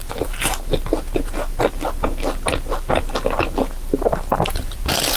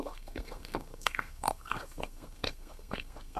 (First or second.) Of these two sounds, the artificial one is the second